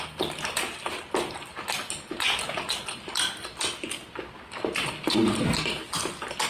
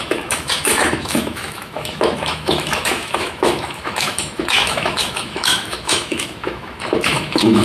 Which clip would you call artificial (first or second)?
second